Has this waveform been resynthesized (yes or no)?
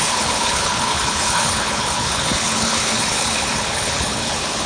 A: yes